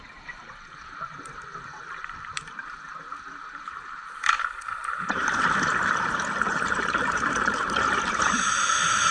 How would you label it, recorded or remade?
remade